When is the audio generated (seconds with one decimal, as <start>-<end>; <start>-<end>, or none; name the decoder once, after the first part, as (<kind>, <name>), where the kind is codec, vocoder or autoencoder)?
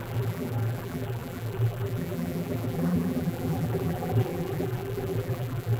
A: 0.0-5.8 (vocoder, BigVGAN v2)